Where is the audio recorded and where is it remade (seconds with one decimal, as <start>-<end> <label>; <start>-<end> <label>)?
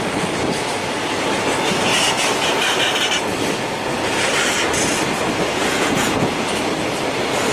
0.0-5.5 recorded; 5.5-6.4 remade; 6.4-7.5 recorded